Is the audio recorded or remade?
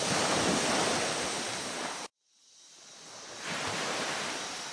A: recorded